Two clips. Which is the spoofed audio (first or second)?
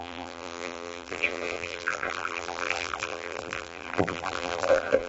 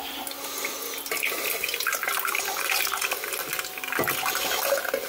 first